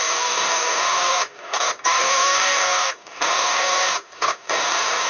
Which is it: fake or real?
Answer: fake